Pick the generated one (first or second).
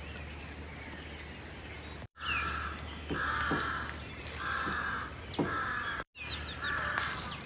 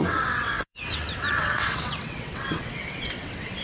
second